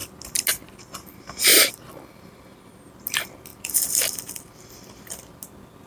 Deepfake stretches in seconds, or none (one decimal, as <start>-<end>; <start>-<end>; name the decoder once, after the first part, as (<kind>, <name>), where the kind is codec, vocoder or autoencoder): 1.5-2.7 (vocoder, BigVGAN v2); 3.5-5.3